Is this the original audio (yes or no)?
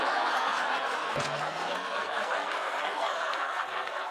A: no